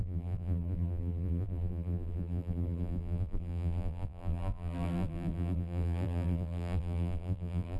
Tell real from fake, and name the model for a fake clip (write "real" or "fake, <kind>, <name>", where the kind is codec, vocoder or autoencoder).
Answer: fake, vocoder, BigVGAN v2